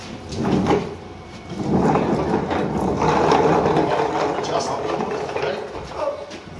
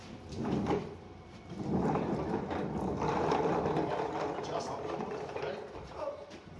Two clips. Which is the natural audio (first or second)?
first